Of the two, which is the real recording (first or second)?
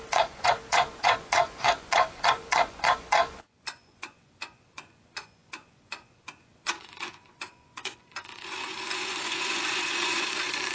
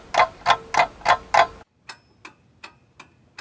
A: second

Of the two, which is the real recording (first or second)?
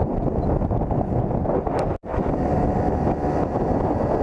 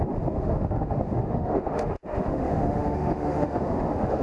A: first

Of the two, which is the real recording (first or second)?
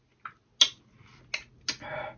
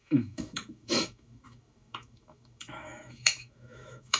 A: first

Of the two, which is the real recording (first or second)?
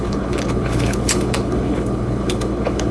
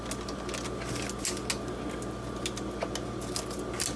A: second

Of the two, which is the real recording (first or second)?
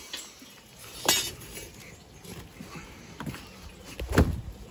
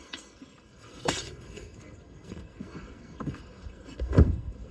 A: first